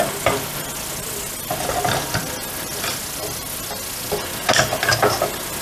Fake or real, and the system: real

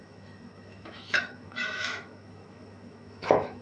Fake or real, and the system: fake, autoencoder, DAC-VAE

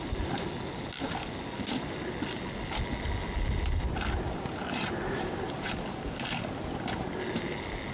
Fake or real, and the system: real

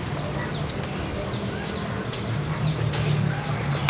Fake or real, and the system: real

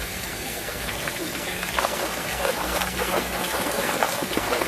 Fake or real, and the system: fake, codec, SNAC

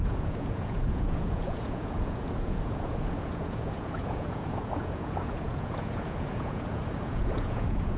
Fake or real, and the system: fake, vocoder, Vocos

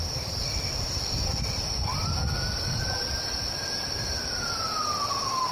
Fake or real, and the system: real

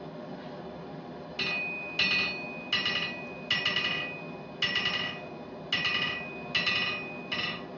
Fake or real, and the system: real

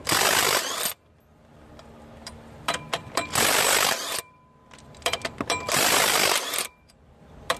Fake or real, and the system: fake, vocoder, BigVGAN v2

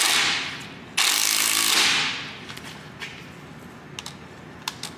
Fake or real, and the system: real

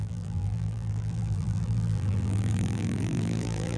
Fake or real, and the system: fake, vocoder, BigVGAN v2